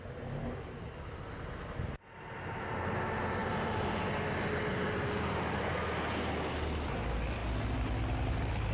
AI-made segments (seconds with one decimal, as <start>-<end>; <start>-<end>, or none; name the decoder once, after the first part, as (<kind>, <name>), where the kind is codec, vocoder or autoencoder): 3.4-4.0 (vocoder, BigVGAN v2); 4.7-5.7